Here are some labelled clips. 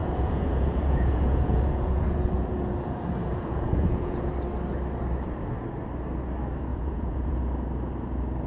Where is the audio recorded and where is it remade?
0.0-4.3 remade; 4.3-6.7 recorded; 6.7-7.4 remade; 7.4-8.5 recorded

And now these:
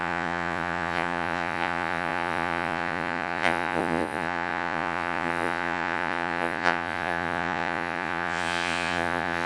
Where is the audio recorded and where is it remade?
0.0-9.5 remade

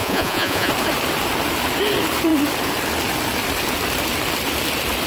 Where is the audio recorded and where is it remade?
0.0-0.7 remade; 0.7-5.1 recorded

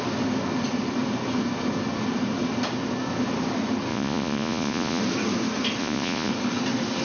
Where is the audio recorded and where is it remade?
0.0-3.9 recorded; 3.9-5.0 remade; 5.0-5.8 recorded; 5.8-6.3 remade; 6.3-7.0 recorded

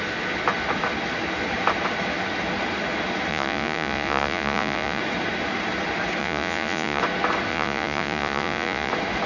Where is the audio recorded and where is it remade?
0.0-3.3 recorded; 3.3-5.0 remade; 5.0-6.2 recorded; 6.2-7.0 remade; 7.0-7.5 recorded; 7.5-8.9 remade; 8.9-9.3 recorded

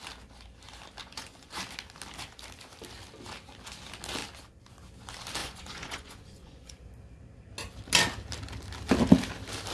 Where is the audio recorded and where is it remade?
0.0-1.0 recorded; 1.0-1.5 remade; 1.5-5.4 recorded; 5.4-6.7 remade; 6.7-9.7 recorded

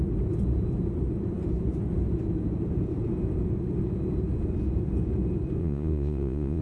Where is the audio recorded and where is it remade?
0.0-5.6 recorded; 5.6-6.6 remade